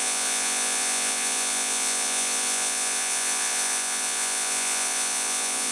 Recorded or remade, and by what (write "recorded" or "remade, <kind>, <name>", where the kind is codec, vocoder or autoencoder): remade, vocoder, Vocos